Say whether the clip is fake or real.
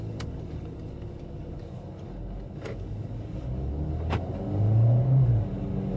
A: fake